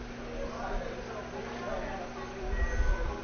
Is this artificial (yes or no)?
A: no